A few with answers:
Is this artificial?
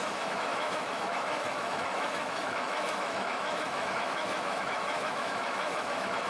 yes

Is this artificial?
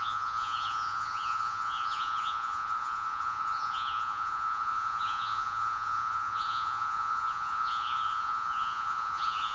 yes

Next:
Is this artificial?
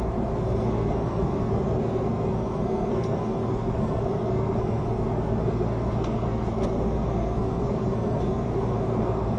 yes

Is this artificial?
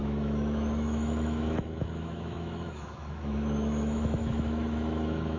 yes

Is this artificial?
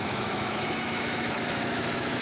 yes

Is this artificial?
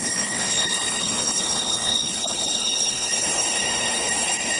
yes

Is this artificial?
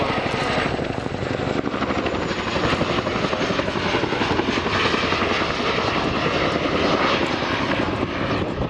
no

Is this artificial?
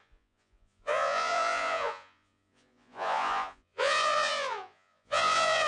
yes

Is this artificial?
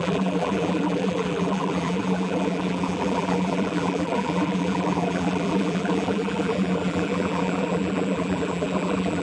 yes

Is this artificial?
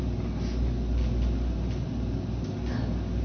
no